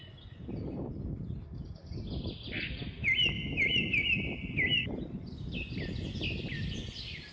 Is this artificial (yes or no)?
no